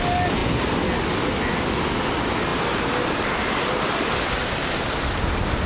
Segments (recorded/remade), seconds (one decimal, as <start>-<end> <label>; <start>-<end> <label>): 0.0-5.7 recorded